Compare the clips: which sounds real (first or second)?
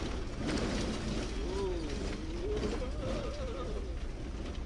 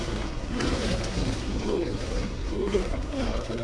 first